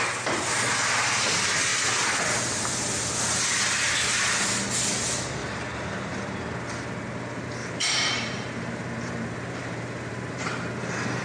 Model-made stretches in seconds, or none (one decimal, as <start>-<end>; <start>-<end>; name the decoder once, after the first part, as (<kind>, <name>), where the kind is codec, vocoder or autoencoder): 5.4-6.0 (vocoder, BigVGAN v2); 7.6-10.7